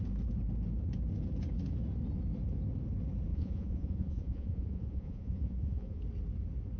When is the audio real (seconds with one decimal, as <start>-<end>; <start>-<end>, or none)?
0.0-3.3; 6.0-6.8